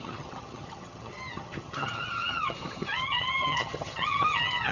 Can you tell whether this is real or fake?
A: fake